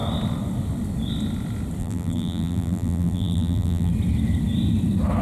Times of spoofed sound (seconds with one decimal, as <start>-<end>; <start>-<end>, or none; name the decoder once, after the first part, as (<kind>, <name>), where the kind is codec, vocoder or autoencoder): 1.8-3.9 (vocoder, BigVGAN v2)

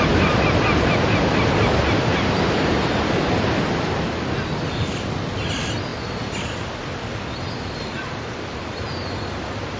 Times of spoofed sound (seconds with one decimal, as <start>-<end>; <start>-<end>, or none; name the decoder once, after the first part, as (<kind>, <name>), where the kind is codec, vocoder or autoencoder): none

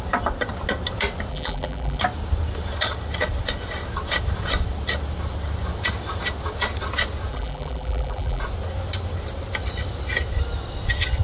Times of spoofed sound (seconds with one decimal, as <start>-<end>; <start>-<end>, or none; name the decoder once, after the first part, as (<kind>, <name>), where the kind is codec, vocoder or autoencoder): 1.3-2.0 (vocoder, BigVGAN v2); 7.3-8.4

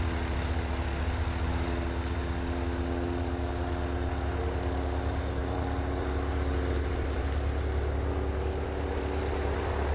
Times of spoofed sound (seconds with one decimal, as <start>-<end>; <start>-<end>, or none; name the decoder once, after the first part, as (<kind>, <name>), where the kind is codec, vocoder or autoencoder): 5.4-7.2 (vocoder, BigVGAN v2)